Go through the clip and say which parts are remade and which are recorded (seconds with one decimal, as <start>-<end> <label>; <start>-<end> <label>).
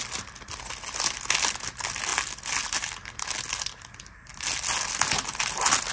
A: 0.0-5.9 recorded